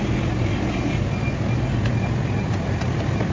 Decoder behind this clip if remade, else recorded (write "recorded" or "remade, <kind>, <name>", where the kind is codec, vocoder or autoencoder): recorded